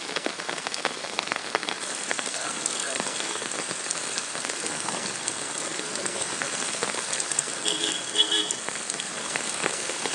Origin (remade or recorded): remade